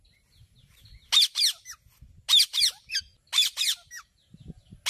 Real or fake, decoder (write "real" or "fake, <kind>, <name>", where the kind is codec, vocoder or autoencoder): real